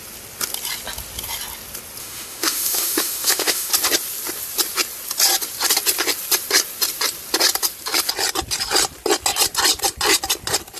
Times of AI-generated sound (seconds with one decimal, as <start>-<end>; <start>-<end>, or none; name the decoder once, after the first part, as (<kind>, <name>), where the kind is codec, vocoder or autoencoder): 2.0-3.7 (autoencoder, DAC-VAE)